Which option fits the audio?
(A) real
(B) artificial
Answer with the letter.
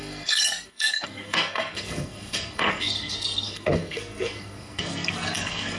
B